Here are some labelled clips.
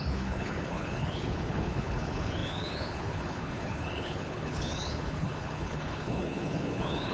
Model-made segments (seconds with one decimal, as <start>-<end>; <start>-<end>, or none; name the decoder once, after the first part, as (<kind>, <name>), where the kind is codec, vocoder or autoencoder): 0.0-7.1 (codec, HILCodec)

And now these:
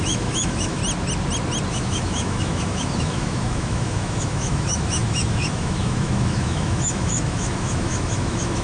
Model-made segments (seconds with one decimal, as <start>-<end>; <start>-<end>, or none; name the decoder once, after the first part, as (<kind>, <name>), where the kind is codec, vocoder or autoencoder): 0.0-0.8 (autoencoder, DAC-VAE); 1.7-8.6

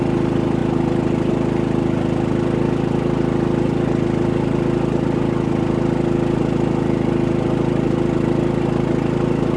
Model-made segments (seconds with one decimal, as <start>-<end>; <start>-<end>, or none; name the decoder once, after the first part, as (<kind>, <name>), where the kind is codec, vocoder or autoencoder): none

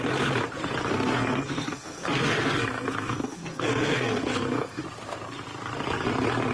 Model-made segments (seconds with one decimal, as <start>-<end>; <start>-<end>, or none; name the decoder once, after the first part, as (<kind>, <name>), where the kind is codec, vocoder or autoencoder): 0.9-4.8 (codec, SNAC)

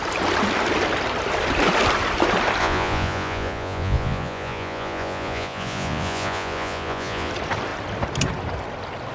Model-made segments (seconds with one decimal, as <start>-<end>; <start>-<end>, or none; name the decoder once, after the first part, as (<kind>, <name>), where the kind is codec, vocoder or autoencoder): 2.6-7.3 (vocoder, Vocos)

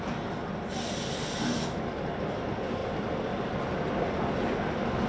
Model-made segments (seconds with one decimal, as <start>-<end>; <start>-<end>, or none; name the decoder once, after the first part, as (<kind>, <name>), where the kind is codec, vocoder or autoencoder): none